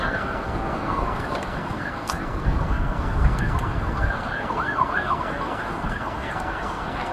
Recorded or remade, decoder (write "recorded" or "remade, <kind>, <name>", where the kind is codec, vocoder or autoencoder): remade, codec, SNAC